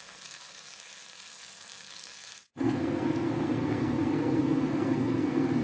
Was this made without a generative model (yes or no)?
no